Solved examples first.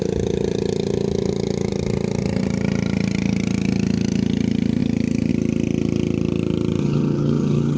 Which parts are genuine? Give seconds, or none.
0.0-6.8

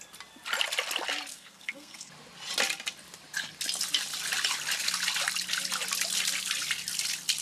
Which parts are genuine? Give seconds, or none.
0.0-1.3; 2.1-7.4